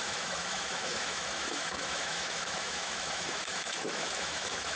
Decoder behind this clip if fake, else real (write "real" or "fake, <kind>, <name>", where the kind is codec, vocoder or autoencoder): fake, autoencoder, DAC-VAE